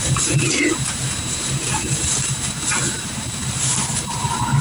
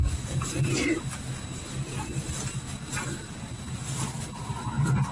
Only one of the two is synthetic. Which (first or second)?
first